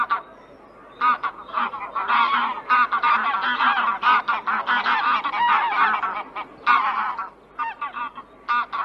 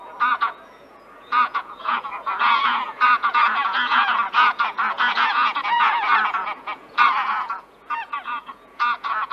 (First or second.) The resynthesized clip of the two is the second